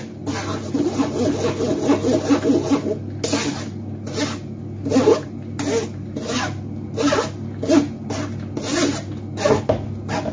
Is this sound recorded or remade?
recorded